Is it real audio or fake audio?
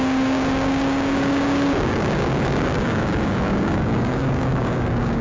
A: fake